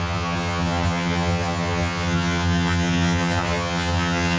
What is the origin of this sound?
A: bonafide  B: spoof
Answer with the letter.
B